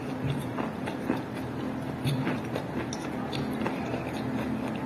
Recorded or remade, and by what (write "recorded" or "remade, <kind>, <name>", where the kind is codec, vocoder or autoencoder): recorded